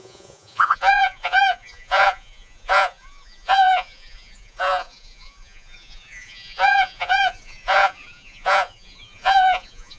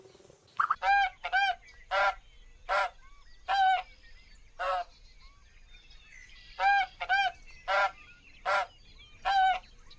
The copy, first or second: first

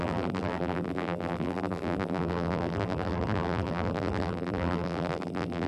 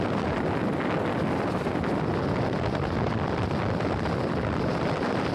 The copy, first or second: first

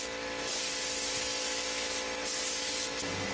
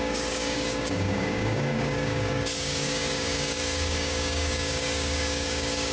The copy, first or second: second